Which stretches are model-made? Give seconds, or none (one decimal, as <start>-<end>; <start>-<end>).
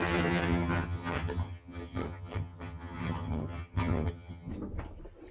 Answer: 0.0-4.5